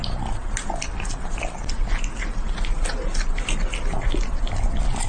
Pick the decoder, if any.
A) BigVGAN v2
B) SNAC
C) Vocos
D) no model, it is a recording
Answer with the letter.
D